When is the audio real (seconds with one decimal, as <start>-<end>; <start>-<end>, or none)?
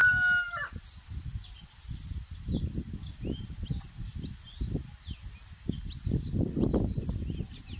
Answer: 0.0-7.8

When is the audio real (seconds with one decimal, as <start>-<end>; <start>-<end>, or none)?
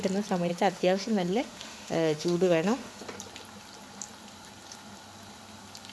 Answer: 0.0-0.5; 3.0-5.9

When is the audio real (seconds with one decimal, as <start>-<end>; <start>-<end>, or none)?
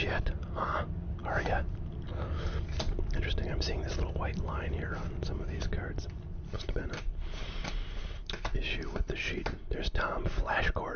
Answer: 0.0-11.0